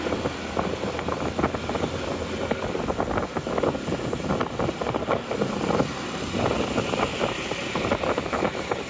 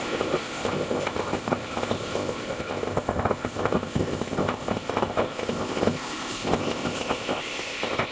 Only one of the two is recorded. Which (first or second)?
first